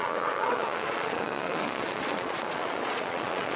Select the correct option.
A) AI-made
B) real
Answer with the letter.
A